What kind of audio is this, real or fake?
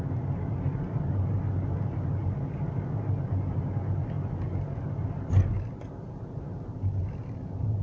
real